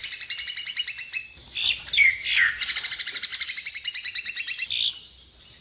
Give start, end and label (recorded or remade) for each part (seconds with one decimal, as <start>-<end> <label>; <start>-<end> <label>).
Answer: 0.0-2.5 remade; 2.5-3.3 recorded; 3.3-4.9 remade; 4.9-5.6 recorded